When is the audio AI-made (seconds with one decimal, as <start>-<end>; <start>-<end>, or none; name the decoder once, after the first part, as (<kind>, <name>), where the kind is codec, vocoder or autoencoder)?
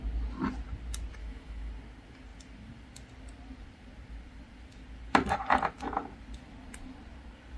1.2-1.7 (autoencoder, DAC-VAE)